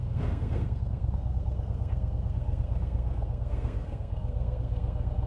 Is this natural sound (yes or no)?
no